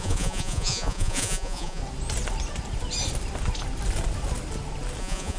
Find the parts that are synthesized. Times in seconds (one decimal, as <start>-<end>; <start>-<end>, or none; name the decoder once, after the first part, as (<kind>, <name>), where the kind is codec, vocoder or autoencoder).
0.0-1.8 (vocoder, Vocos); 5.0-5.4